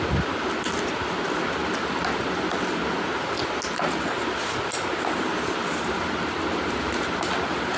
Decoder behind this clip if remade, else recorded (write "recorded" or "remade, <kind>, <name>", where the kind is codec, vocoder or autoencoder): recorded